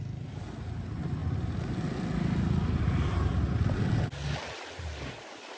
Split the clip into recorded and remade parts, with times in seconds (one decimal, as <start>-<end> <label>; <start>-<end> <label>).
0.0-5.6 recorded

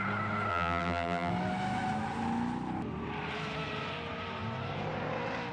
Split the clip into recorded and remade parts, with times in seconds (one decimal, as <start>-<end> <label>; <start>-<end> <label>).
0.0-0.5 recorded; 0.5-1.3 remade; 1.3-5.5 recorded

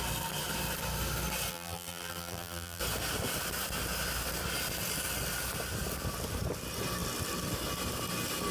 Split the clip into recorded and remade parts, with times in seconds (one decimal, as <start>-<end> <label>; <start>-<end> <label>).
0.0-1.5 recorded; 1.5-2.8 remade; 2.8-8.5 recorded

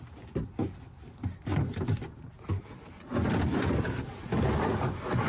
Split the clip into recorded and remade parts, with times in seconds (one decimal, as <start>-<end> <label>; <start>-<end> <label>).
0.0-5.3 recorded

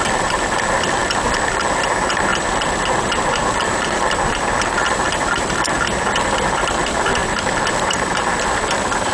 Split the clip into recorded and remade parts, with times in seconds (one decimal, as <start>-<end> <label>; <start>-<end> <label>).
0.0-2.3 remade; 2.3-3.5 recorded; 3.5-7.2 remade; 7.2-7.7 recorded; 7.7-9.1 remade

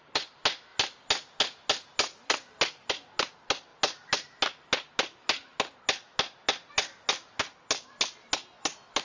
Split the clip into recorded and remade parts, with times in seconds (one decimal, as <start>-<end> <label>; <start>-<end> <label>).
0.0-9.0 recorded

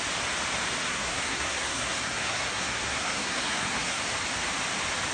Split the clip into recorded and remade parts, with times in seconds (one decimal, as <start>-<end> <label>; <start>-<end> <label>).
0.0-0.9 recorded; 0.9-4.0 remade; 4.0-5.1 recorded